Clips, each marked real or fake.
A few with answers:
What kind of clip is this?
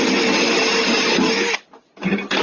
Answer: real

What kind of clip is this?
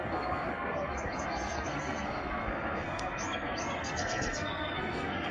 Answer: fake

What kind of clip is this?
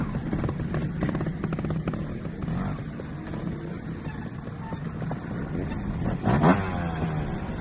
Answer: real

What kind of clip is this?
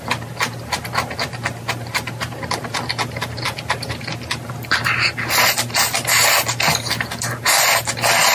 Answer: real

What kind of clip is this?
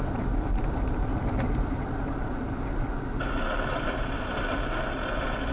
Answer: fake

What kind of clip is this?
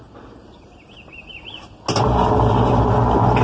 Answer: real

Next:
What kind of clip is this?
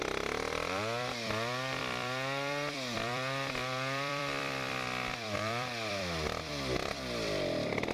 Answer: fake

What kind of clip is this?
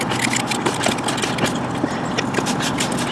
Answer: real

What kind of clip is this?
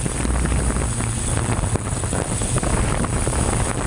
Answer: fake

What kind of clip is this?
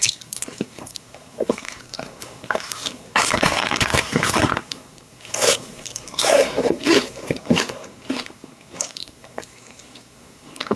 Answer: fake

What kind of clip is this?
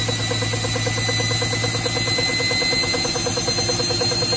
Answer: real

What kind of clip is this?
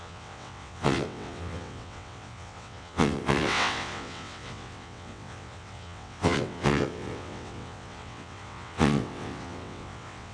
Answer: fake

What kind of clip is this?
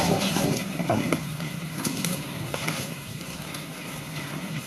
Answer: fake